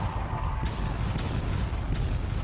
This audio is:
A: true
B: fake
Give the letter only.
A